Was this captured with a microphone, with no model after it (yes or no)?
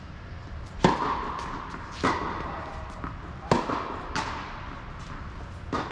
yes